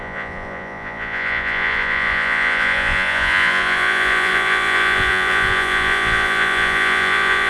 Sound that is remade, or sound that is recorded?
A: remade